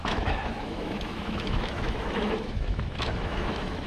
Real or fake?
fake